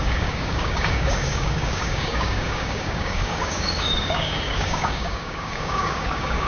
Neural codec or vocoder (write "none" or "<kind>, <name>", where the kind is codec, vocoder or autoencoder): codec, DAC